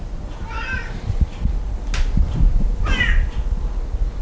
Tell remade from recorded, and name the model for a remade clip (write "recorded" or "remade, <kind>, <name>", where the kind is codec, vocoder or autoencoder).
recorded